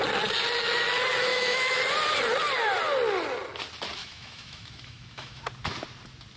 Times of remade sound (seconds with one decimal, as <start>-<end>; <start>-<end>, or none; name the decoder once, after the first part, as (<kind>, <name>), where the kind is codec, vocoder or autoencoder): 1.3-1.8 (autoencoder, DAC-VAE); 4.0-5.4